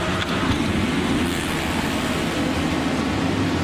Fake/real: real